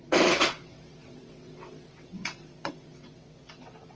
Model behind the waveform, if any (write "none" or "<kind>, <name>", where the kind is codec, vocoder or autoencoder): vocoder, WaveNeXt